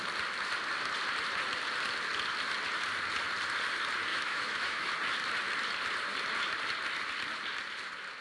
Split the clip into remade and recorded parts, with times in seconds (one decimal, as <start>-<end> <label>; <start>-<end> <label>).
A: 0.0-4.1 recorded; 4.1-4.9 remade; 4.9-8.2 recorded